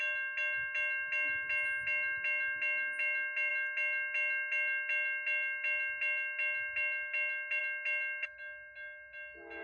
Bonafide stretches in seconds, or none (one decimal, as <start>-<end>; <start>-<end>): 0.0-9.6